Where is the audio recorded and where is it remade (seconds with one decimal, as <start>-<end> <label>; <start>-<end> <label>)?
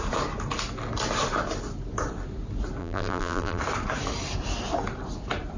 0.0-2.8 recorded; 2.8-3.6 remade; 3.6-5.6 recorded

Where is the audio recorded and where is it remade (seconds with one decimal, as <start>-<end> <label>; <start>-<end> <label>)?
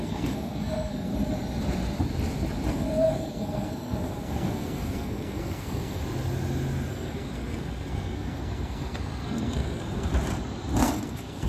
0.0-1.1 remade; 1.1-2.7 recorded; 2.7-6.0 remade; 6.0-6.9 recorded; 6.9-10.1 remade; 10.1-10.8 recorded; 10.8-11.5 remade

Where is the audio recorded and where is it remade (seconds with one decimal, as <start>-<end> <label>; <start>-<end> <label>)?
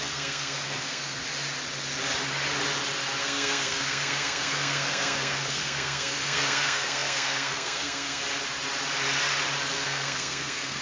0.0-1.2 remade; 1.2-3.2 recorded; 3.2-8.2 remade; 8.2-9.7 recorded; 9.7-10.8 remade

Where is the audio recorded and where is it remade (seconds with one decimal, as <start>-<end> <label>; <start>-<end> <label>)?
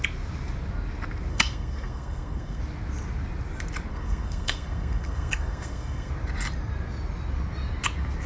0.0-1.3 recorded; 1.3-2.6 remade; 2.6-3.9 recorded; 3.9-6.1 remade; 6.1-8.3 recorded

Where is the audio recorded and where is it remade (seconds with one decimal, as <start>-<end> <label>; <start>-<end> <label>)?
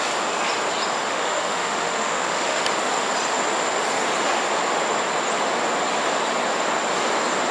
0.0-1.1 recorded; 1.1-2.6 remade; 2.6-7.5 recorded